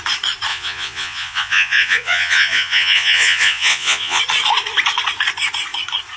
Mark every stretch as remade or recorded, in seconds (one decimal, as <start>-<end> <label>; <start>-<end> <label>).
0.0-0.5 recorded; 0.5-4.2 remade; 4.2-6.2 recorded